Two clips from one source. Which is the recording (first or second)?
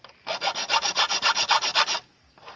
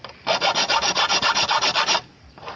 first